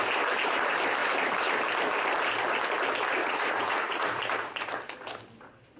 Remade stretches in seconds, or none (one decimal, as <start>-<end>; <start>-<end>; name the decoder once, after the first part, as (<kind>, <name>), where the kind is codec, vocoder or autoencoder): 3.2-4.2 (vocoder, Vocos)